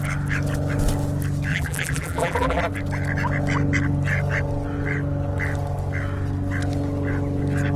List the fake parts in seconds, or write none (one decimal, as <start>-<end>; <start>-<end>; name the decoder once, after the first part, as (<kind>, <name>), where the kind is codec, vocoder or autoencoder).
1.5-2.6 (vocoder, BigVGAN v2)